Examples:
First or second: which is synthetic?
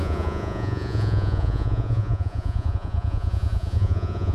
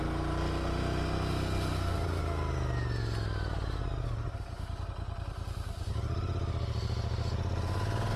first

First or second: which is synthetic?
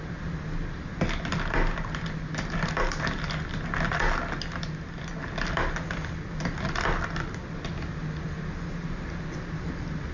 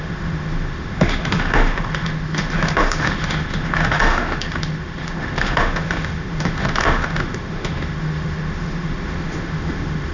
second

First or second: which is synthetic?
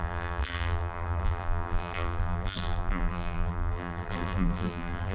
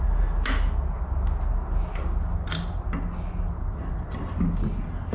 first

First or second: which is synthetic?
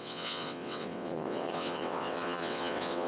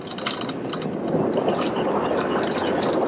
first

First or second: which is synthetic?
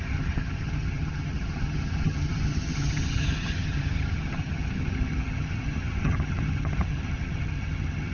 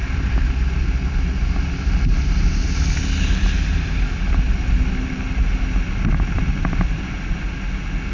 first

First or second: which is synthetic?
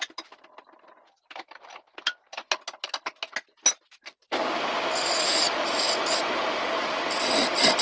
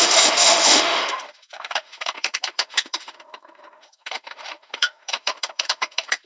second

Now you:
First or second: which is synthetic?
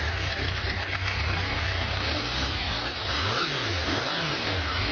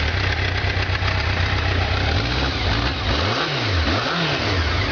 first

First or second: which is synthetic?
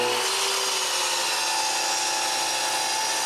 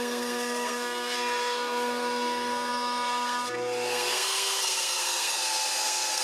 second